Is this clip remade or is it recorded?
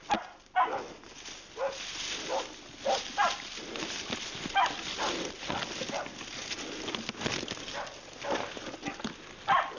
recorded